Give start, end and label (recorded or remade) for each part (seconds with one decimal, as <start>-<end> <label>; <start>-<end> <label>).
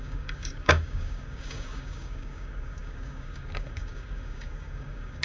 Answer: 0.0-5.2 remade